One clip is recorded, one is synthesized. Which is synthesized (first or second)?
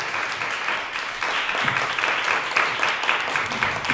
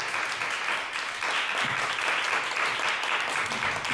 first